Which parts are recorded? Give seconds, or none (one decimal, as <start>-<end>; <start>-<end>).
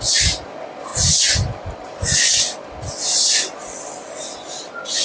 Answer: 0.0-5.0